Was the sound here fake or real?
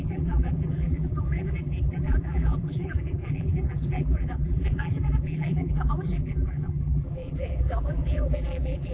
fake